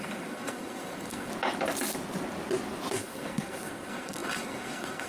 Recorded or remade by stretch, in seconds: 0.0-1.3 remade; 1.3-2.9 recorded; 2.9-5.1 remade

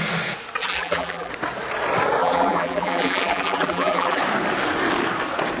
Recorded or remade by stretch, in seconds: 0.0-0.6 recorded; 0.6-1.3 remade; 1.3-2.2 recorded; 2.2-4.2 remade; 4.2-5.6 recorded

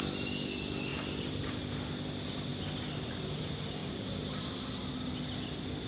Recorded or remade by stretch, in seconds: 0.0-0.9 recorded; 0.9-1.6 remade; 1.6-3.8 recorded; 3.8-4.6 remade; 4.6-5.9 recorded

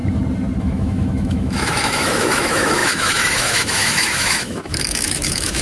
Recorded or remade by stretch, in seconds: 0.0-0.6 recorded; 0.6-5.6 remade